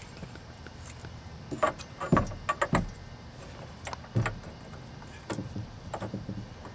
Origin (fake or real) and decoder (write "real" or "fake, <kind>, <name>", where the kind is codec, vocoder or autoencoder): real